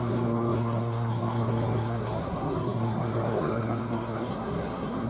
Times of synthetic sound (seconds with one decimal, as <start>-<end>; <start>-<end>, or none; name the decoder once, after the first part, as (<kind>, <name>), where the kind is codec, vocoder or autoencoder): 0.0-5.1 (codec, SNAC)